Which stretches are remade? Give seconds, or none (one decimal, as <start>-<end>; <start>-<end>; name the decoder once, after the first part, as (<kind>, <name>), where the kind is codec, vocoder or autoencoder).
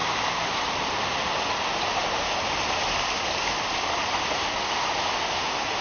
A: none